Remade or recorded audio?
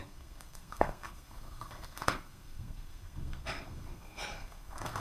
remade